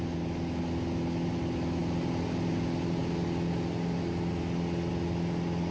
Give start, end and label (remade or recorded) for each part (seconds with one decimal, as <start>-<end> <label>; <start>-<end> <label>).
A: 0.0-5.7 recorded